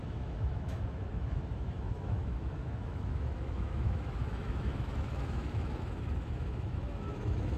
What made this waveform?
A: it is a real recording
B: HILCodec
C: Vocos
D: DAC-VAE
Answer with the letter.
D